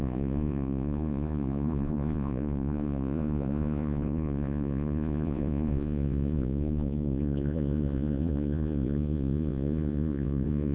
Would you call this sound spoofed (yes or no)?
yes